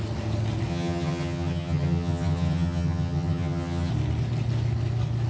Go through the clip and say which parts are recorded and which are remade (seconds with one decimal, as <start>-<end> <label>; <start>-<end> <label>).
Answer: 0.0-0.7 recorded; 0.7-3.9 remade; 3.9-5.3 recorded